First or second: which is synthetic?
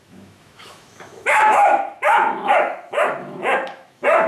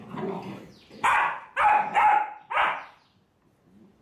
first